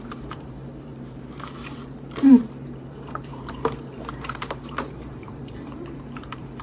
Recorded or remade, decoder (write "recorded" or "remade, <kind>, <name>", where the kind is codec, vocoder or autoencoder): remade, vocoder, BigVGAN v2